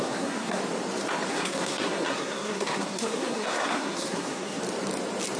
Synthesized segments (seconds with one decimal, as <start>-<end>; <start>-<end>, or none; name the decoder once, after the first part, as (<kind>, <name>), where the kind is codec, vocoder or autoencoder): 0.0-0.6 (codec, SNAC); 1.3-4.6